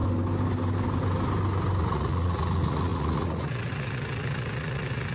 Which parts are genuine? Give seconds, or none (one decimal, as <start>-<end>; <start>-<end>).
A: 0.0-1.8